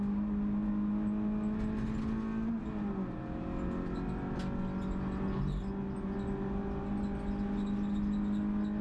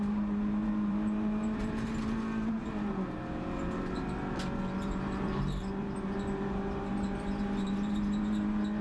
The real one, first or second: first